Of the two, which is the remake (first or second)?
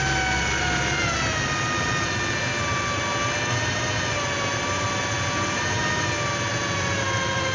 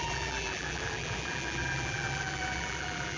second